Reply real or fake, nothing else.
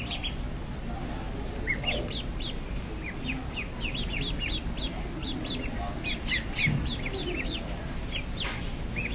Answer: real